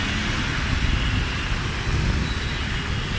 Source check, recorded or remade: recorded